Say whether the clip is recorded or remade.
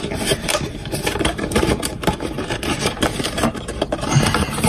remade